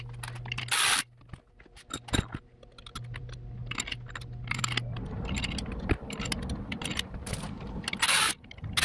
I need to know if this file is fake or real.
real